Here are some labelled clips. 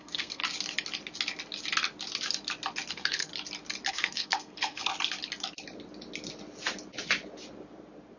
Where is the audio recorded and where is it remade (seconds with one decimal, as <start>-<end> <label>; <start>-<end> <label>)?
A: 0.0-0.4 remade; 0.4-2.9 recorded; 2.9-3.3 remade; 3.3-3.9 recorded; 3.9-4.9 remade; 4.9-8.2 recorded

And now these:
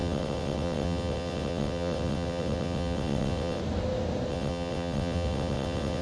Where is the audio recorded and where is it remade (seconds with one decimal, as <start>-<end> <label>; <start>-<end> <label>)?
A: 0.0-3.6 remade; 3.6-4.3 recorded; 4.3-6.0 remade

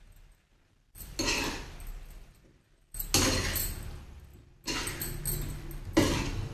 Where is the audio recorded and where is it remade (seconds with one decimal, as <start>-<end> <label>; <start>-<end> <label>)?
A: 0.0-6.5 recorded

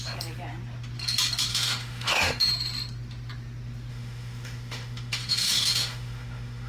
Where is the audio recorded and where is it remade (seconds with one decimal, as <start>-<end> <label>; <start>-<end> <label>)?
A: 0.0-1.5 recorded; 1.5-2.5 remade; 2.5-3.9 recorded; 3.9-6.7 remade

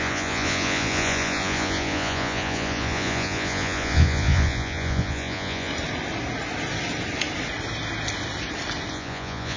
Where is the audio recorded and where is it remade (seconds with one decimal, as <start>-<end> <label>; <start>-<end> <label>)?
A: 0.0-5.7 remade; 5.7-8.9 recorded; 8.9-9.6 remade

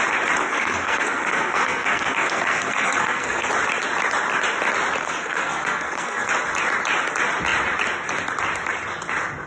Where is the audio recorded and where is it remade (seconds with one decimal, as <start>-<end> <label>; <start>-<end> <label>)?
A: 0.0-0.4 recorded; 0.4-3.5 remade; 3.5-5.0 recorded; 5.0-6.3 remade; 6.3-9.5 recorded

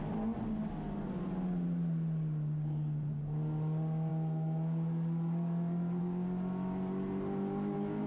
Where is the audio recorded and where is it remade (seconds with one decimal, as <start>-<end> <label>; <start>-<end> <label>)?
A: 0.0-8.1 recorded